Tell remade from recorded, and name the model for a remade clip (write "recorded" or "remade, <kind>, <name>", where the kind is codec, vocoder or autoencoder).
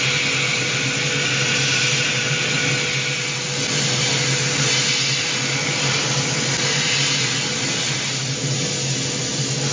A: recorded